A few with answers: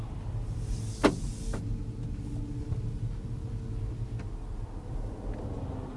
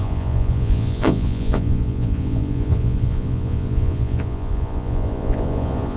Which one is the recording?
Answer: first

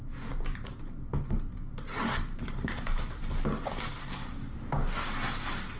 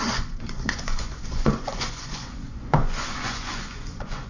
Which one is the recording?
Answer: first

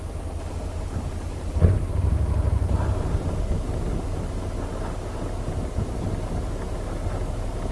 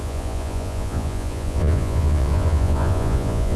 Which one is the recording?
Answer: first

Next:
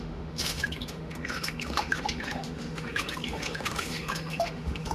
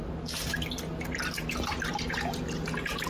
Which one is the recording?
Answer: second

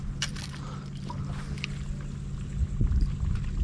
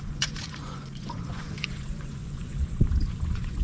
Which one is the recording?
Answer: first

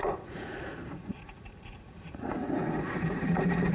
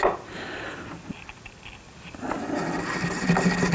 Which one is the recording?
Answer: second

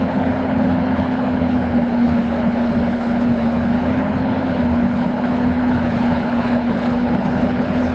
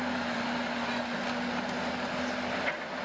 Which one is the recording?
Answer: second